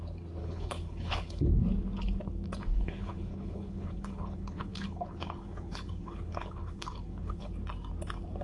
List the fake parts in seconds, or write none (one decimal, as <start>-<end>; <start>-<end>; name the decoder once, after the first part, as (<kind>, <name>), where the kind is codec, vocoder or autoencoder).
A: 0.4-1.6 (codec, HILCodec); 2.7-7.5